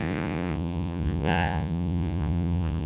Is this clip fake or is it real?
fake